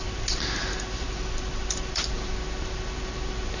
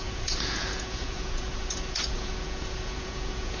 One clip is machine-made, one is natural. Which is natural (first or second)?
first